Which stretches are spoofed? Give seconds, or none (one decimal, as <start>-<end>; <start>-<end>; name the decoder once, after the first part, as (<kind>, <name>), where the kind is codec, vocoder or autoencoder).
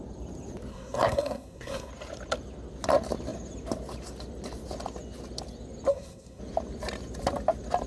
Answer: 0.7-1.9 (codec, SNAC); 5.9-6.4